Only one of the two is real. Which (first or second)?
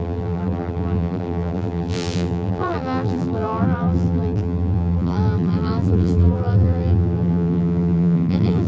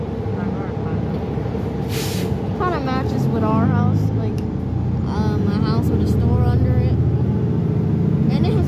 second